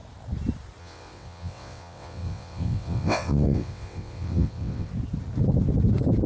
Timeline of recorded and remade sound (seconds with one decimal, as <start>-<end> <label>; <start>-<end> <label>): 0.0-0.8 recorded; 0.8-4.9 remade; 4.9-6.3 recorded